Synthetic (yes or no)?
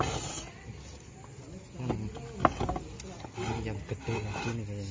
no